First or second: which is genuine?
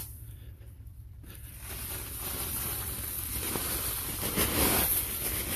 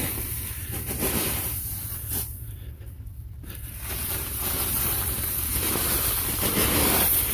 first